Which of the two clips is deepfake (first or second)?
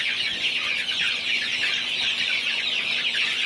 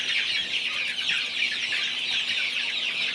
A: first